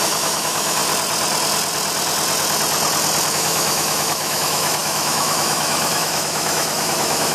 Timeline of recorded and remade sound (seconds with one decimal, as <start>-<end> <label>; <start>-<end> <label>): 0.0-0.8 remade; 0.8-3.3 recorded; 3.3-7.3 remade